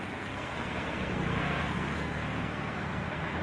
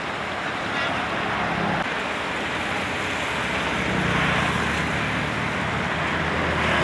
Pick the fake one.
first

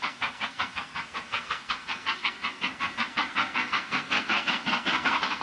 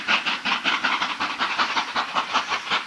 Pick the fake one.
first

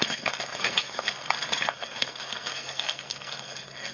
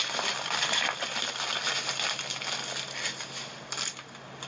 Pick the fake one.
first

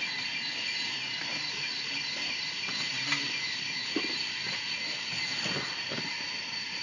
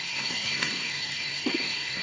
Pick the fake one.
second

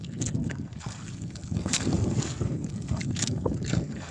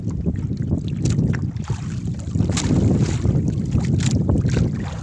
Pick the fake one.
first